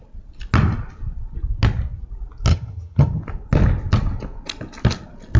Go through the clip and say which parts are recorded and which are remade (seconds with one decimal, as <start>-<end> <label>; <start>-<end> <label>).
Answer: 0.0-2.5 recorded; 2.5-3.2 remade; 3.2-5.4 recorded